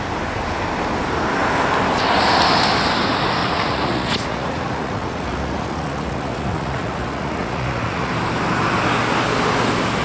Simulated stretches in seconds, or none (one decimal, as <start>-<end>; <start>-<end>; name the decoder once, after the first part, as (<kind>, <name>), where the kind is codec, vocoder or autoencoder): 3.4-8.1 (vocoder, Vocos)